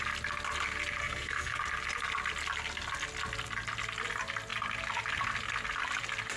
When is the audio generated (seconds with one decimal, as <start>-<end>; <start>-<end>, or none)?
1.0-1.6